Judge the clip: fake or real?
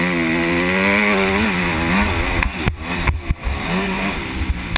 real